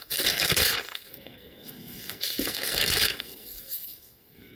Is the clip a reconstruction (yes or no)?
yes